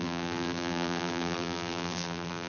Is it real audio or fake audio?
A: fake